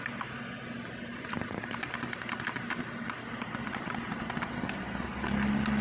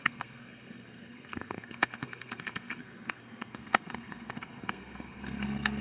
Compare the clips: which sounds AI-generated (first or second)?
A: second